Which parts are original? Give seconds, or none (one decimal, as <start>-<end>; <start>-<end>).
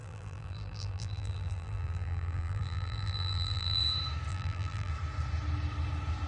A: 3.8-4.3; 4.9-6.3